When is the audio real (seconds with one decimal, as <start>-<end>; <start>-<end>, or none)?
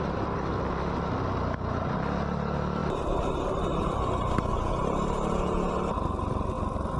0.0-7.0